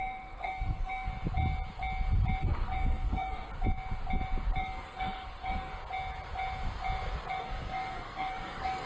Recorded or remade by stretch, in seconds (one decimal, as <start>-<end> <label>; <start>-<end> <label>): 0.0-1.1 remade; 1.1-2.4 recorded; 2.4-3.5 remade; 3.5-4.6 recorded; 4.6-5.7 remade; 5.7-7.4 recorded; 7.4-8.9 remade